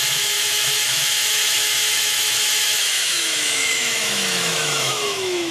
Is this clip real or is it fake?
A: fake